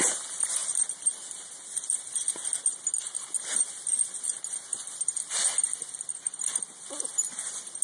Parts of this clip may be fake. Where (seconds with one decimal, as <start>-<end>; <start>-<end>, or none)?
4.7-5.3; 6.1-7.8